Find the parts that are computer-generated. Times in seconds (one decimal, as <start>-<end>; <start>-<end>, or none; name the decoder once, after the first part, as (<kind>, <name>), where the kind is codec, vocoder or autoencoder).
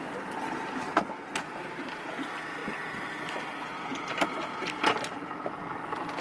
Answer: none